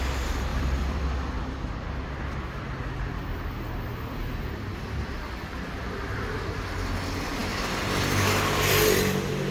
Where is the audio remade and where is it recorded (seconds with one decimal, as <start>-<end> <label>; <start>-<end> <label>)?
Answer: 0.0-0.5 recorded; 0.5-1.3 remade; 1.3-9.5 recorded